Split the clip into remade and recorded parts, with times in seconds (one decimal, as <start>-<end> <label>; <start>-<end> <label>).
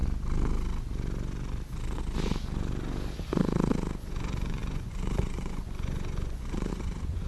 0.0-4.1 recorded; 4.1-7.3 remade